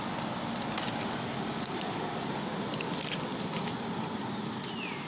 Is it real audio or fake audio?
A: real